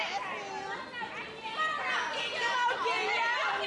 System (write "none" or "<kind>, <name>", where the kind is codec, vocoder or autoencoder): none